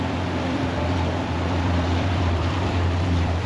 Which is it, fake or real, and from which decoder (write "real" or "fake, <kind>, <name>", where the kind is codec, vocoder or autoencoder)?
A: fake, vocoder, BigVGAN v2